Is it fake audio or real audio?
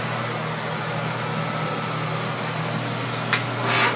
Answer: real